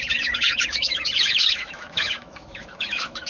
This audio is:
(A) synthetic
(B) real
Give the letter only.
A